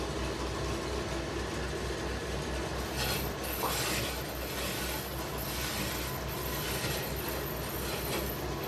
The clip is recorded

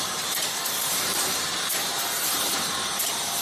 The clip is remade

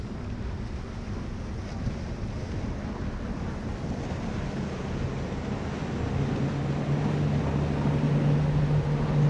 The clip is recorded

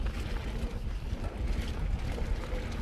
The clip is recorded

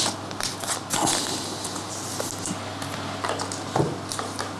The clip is recorded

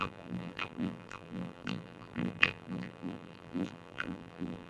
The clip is remade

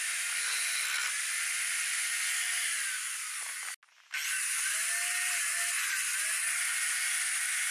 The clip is recorded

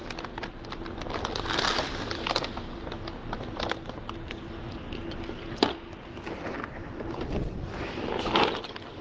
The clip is remade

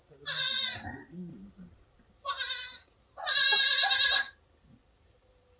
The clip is recorded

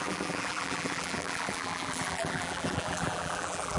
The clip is remade